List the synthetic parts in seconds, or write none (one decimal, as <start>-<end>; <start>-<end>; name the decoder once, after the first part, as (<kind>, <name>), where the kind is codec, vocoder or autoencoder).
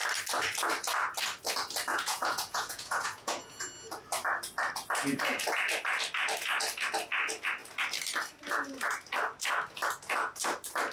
1.9-3.6 (vocoder, Vocos)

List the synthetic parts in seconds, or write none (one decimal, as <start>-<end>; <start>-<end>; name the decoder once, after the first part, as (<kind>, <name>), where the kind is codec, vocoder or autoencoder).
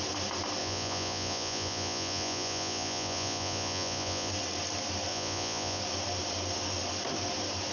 0.6-4.3 (vocoder, Vocos); 5.1-5.8